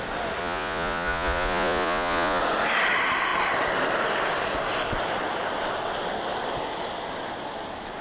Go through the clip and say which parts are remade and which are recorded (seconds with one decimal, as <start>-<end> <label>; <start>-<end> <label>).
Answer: 0.0-0.4 recorded; 0.4-2.4 remade; 2.4-8.0 recorded